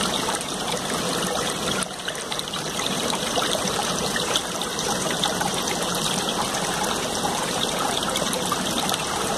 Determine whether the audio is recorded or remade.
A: remade